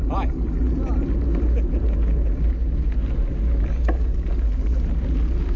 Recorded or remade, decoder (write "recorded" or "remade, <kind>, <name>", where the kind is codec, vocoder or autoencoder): recorded